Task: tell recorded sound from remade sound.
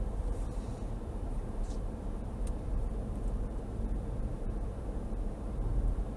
remade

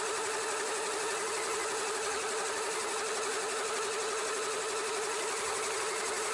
recorded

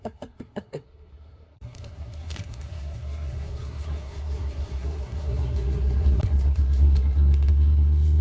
remade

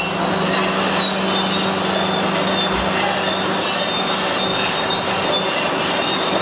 recorded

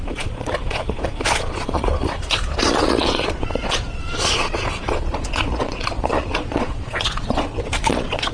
remade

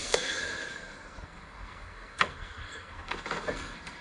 remade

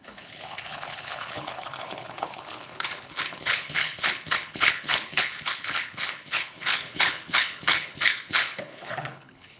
remade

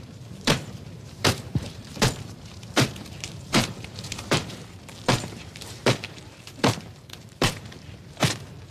remade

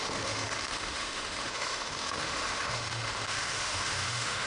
remade